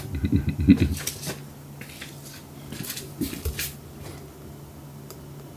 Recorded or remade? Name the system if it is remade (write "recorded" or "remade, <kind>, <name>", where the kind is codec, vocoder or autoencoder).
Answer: recorded